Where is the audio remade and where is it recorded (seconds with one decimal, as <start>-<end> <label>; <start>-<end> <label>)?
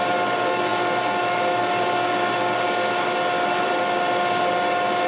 0.0-5.1 recorded